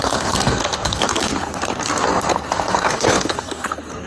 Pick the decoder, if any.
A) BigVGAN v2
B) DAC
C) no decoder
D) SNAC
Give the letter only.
D